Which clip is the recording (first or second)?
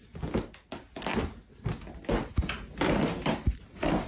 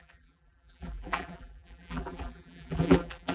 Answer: first